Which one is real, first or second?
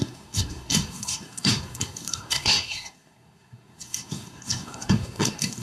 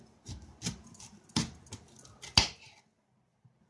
second